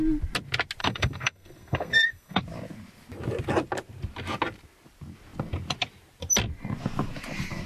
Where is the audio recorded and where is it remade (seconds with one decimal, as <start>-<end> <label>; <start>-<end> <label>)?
0.0-0.8 recorded; 0.8-2.4 remade; 2.4-7.7 recorded